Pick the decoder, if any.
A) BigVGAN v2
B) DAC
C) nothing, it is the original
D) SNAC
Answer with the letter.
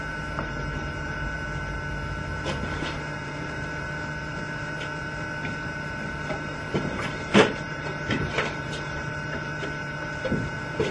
A